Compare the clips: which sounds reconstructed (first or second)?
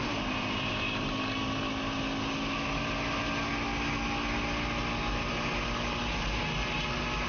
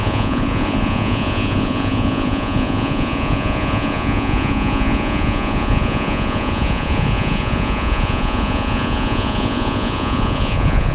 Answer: second